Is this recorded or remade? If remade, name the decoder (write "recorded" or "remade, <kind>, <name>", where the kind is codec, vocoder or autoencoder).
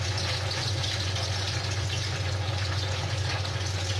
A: remade, vocoder, Vocos